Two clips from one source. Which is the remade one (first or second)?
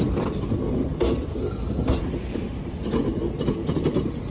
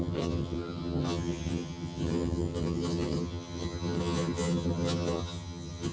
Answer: second